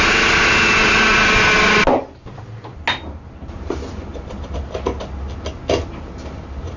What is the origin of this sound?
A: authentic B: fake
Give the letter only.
A